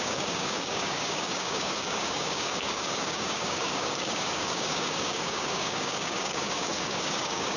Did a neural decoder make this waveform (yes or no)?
yes